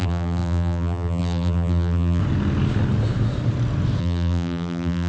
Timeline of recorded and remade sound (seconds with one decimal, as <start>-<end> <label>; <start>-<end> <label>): 0.0-2.2 remade; 2.2-4.0 recorded; 4.0-5.1 remade